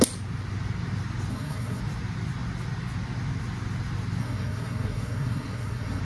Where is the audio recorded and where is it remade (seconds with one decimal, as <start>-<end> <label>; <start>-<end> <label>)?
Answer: 0.0-1.3 recorded; 1.3-1.8 remade; 1.8-4.2 recorded; 4.2-6.0 remade